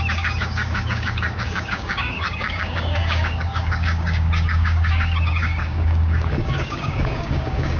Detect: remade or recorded remade